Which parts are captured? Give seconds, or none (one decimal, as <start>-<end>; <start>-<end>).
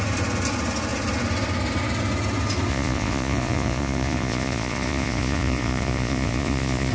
0.0-2.7